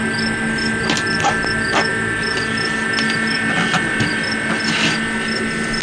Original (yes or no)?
yes